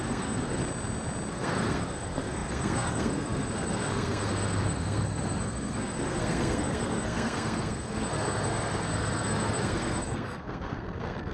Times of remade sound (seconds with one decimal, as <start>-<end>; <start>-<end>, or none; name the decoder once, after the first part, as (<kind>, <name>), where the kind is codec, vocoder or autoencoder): 0.0-0.6 (codec, SNAC); 1.3-11.3